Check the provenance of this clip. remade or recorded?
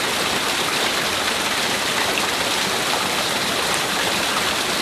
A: recorded